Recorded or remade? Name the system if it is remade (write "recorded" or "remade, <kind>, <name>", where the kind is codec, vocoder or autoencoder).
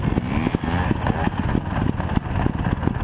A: recorded